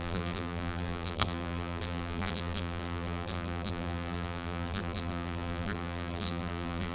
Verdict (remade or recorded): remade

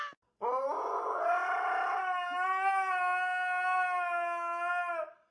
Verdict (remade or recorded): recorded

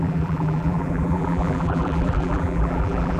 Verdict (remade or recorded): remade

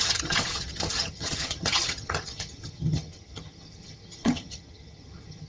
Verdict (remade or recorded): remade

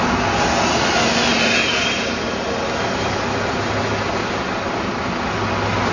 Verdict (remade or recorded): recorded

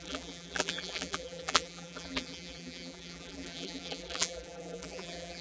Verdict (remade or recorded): remade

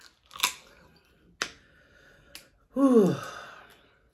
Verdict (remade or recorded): recorded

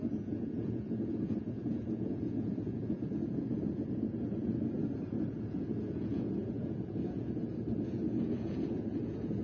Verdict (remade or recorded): remade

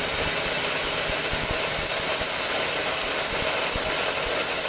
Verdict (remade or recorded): recorded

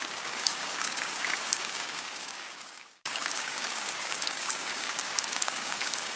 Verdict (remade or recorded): remade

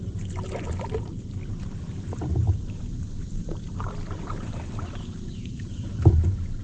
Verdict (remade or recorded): remade